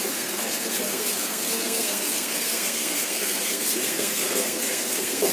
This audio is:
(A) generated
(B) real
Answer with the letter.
A